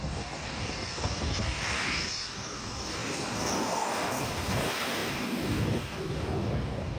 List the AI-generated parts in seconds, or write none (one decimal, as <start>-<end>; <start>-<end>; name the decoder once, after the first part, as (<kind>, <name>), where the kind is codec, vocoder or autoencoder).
0.0-7.0 (codec, DAC)